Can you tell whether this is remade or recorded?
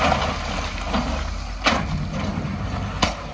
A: recorded